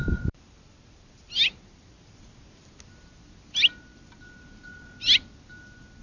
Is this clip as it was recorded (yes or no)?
yes